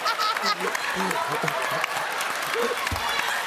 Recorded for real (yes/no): yes